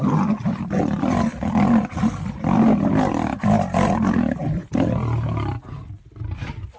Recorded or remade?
recorded